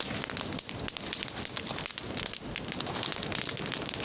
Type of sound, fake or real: real